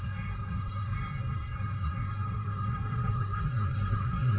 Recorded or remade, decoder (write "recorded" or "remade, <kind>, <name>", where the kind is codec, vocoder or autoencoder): remade, codec, SNAC